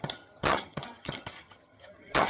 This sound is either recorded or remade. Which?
remade